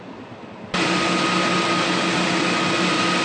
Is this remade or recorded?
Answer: recorded